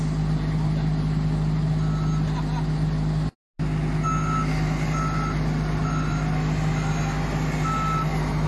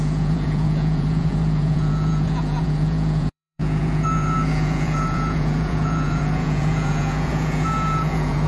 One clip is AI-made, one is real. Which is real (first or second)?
first